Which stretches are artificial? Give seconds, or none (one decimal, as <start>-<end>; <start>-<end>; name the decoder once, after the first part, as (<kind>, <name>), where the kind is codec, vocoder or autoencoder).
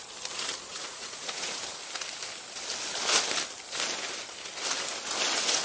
0.7-1.6 (vocoder, Vocos)